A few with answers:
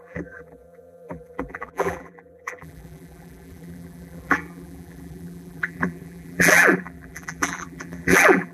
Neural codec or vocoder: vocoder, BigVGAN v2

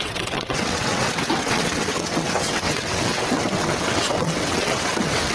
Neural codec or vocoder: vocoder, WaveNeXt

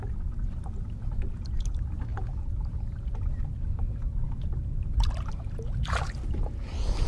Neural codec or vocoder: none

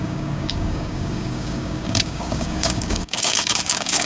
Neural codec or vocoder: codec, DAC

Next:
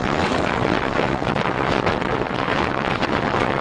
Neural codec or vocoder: vocoder, WaveNeXt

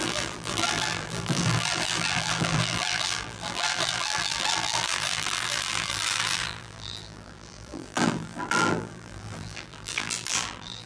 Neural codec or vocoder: vocoder, BigVGAN v2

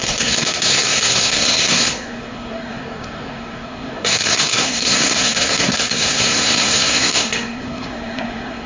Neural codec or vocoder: codec, SNAC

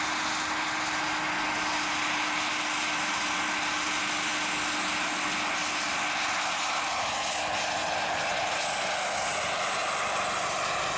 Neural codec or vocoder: none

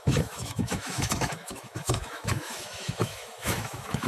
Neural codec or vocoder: autoencoder, DAC-VAE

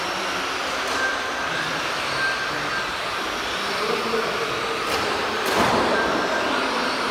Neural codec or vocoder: none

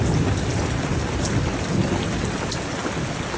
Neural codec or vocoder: none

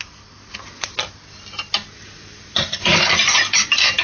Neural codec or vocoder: none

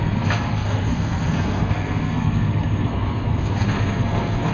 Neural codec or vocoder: codec, SNAC